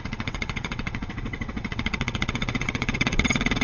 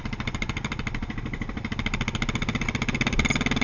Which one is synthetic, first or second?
first